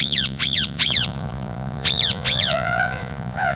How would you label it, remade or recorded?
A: remade